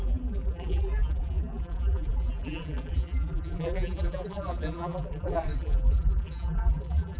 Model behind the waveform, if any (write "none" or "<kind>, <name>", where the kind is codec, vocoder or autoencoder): vocoder, BigVGAN v2